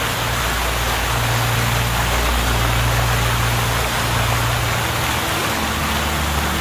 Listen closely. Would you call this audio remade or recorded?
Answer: recorded